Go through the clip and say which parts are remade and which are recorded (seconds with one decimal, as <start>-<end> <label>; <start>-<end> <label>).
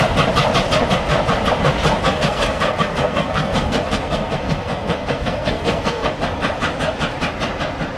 0.0-2.0 recorded; 2.0-6.1 remade; 6.1-8.0 recorded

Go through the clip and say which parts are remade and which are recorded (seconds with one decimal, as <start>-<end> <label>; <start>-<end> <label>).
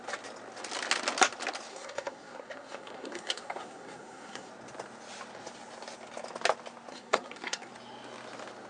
0.0-1.7 recorded; 1.7-4.5 remade; 4.5-6.9 recorded; 6.9-7.7 remade; 7.7-8.7 recorded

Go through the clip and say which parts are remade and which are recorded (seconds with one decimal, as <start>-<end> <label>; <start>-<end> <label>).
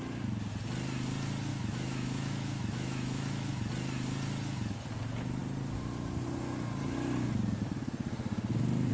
0.0-1.5 recorded; 1.5-3.5 remade; 3.5-8.9 recorded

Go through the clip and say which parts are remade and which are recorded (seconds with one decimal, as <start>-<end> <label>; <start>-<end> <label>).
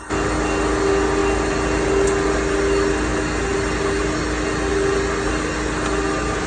0.0-6.5 recorded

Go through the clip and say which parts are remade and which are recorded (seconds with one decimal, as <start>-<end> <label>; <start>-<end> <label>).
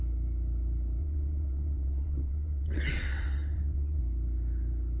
0.0-1.0 recorded; 1.0-4.0 remade; 4.0-5.0 recorded